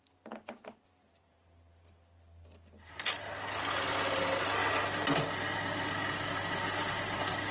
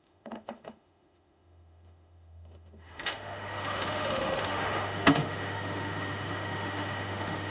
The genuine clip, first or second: first